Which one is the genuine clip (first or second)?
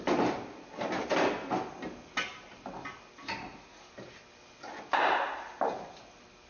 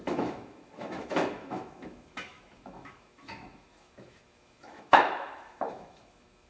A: first